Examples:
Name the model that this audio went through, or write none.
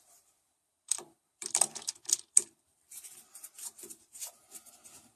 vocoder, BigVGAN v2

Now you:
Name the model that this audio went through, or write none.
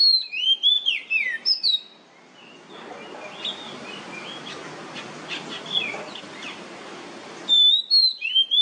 none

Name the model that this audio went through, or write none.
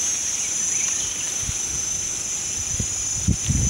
none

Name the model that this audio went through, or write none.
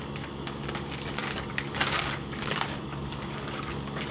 codec, DAC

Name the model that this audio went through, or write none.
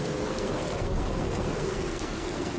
codec, SNAC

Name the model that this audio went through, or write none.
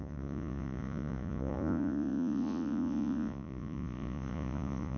vocoder, Vocos